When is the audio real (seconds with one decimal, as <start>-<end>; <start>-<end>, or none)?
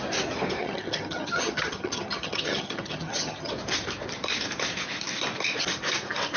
0.0-0.6; 3.5-6.4